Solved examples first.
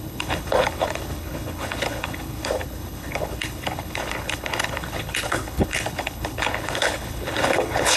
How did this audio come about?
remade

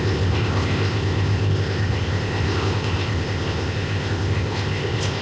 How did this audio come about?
remade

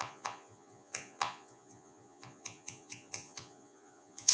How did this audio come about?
remade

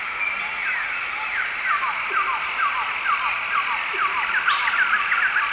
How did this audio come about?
recorded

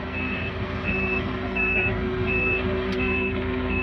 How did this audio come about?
remade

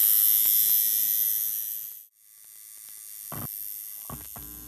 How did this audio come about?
recorded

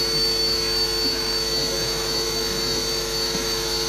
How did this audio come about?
remade